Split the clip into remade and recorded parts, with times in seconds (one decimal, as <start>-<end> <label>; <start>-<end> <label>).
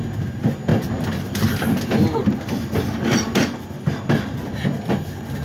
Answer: 0.0-5.4 recorded